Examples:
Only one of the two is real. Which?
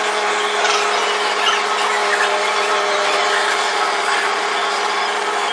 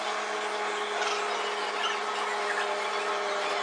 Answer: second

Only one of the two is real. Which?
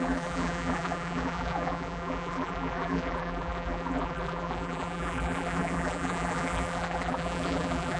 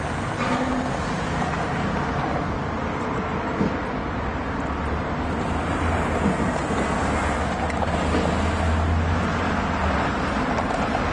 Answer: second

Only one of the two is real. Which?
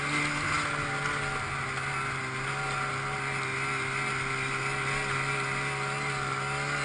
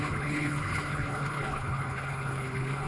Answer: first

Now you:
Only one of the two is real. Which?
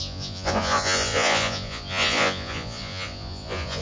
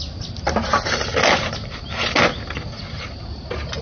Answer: second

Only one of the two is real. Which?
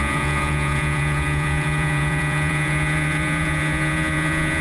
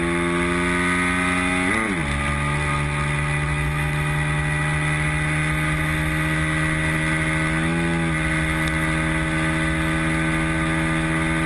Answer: second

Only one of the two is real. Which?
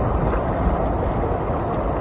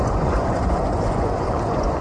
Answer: first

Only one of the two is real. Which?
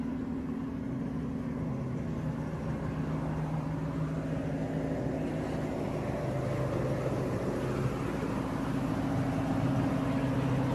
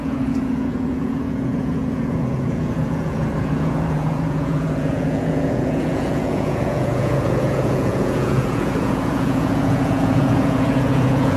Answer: first